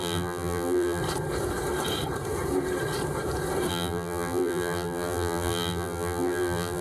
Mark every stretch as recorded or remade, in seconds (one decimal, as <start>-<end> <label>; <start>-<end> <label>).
0.0-1.0 remade; 1.0-3.7 recorded; 3.7-6.8 remade